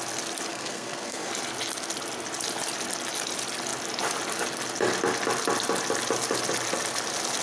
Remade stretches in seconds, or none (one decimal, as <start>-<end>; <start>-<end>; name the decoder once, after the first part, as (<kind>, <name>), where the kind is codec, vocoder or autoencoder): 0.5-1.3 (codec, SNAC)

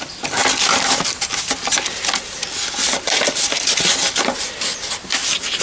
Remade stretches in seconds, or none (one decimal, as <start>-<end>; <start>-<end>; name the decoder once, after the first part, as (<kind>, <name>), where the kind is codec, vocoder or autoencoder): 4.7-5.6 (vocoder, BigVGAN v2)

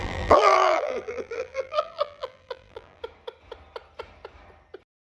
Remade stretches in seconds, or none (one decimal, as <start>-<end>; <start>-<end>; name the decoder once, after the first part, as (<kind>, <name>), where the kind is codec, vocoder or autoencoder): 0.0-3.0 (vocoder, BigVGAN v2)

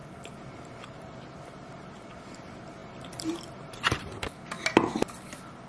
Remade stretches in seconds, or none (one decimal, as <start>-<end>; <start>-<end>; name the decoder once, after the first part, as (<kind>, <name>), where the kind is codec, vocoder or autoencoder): none

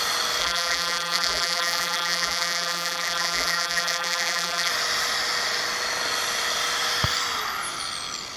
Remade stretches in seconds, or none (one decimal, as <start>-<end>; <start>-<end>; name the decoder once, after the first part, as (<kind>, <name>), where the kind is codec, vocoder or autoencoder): 0.4-4.7 (vocoder, BigVGAN v2)

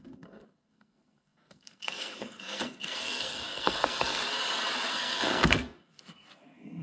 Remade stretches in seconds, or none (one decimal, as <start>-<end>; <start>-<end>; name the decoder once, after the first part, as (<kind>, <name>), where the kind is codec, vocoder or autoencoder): 0.0-4.2 (codec, SNAC); 4.9-6.8

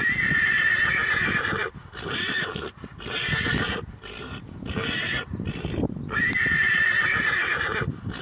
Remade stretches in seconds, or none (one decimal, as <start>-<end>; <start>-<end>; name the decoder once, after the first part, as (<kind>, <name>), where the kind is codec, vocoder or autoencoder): 0.0-8.2 (vocoder, BigVGAN v2)